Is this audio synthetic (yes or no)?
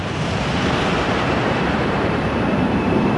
yes